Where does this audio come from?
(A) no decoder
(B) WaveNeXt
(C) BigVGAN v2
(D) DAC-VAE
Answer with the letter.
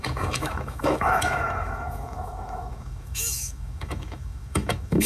D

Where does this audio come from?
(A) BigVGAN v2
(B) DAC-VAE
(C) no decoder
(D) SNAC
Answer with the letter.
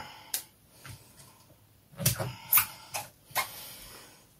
C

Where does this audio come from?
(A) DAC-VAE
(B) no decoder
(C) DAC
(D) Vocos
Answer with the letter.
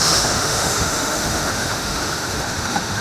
A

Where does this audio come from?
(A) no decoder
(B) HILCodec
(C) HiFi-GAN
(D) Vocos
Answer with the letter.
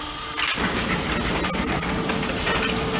A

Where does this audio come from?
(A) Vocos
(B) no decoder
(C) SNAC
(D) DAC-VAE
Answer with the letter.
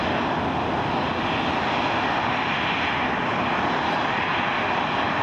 B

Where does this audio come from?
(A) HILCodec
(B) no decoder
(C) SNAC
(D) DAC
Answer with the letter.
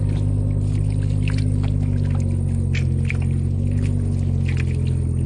B